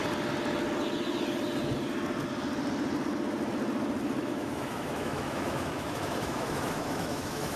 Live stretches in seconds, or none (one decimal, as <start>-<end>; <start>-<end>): 0.0-4.2